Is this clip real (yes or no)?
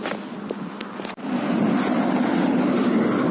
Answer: yes